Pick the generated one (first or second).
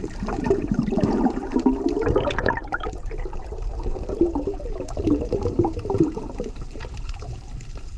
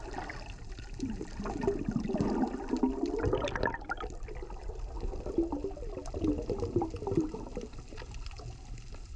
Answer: first